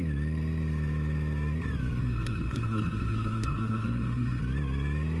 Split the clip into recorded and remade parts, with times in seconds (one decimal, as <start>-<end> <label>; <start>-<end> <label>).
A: 0.0-2.0 recorded; 2.0-4.4 remade; 4.4-5.2 recorded